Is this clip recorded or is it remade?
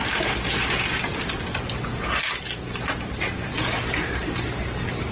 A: recorded